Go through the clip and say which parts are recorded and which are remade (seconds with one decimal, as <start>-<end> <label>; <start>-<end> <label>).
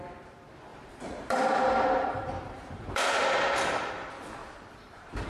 0.0-0.7 recorded; 0.7-3.9 remade; 3.9-4.4 recorded; 4.4-5.3 remade